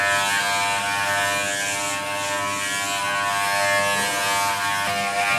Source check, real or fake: real